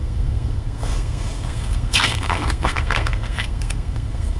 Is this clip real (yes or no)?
no